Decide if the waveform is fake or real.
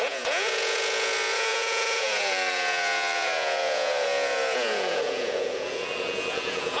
fake